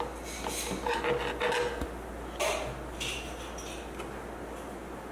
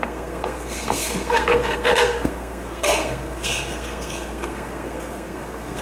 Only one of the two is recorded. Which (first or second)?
first